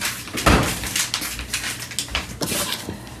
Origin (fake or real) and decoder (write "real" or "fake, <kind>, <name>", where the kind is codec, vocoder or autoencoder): real